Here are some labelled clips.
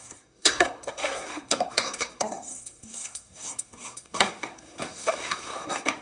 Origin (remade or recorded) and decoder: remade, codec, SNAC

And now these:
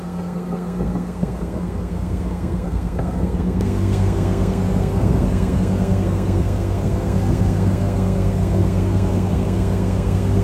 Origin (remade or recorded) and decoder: remade, codec, SNAC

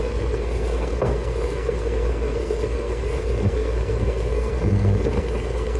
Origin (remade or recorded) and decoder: remade, codec, SNAC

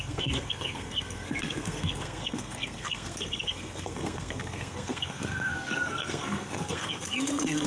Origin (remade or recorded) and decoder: remade, codec, SNAC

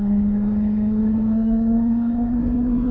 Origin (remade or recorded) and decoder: remade, codec, SNAC